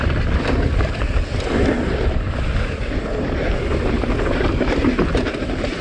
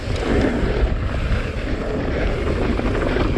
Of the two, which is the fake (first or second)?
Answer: first